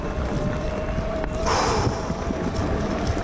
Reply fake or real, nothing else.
real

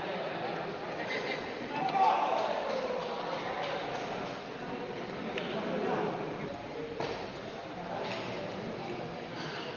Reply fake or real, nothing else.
real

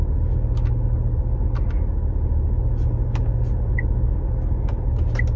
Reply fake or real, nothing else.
real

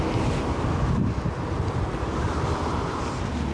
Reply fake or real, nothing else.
real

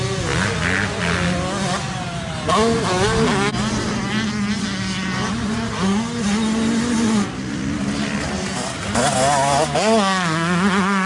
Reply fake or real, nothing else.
real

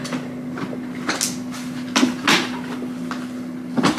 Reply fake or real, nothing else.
real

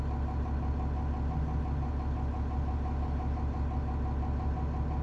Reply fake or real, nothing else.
real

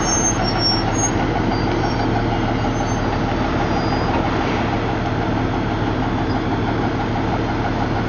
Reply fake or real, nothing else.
real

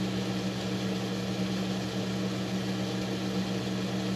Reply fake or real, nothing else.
real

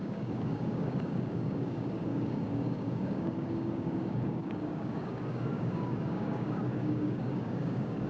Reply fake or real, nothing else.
fake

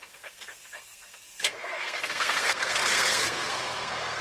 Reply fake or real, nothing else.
fake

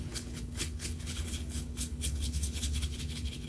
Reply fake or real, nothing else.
fake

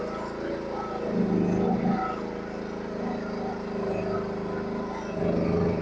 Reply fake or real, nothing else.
real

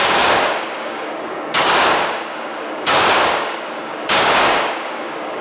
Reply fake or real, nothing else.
fake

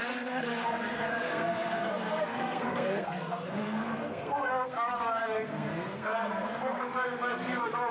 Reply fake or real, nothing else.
fake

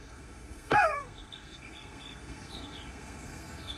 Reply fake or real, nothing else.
fake